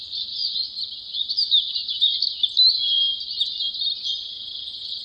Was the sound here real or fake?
real